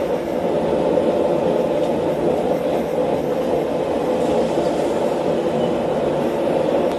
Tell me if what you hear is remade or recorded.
recorded